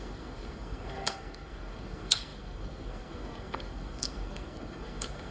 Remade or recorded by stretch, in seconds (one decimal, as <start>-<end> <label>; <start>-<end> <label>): 0.0-5.3 remade